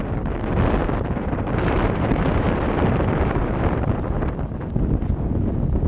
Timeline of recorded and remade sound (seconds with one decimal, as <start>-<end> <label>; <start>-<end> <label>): 0.0-0.8 recorded; 0.8-4.3 remade; 4.3-5.9 recorded